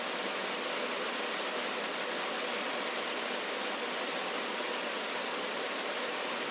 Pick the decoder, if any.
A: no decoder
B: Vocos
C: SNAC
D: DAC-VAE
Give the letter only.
A